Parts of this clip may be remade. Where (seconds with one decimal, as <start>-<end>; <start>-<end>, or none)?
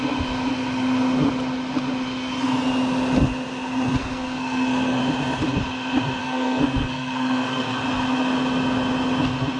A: 4.0-5.0; 6.2-7.8